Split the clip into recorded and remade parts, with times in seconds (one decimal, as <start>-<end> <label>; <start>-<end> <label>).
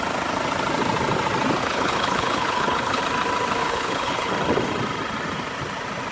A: 0.0-1.6 recorded; 1.6-3.0 remade; 3.0-3.6 recorded; 3.6-4.3 remade; 4.3-6.1 recorded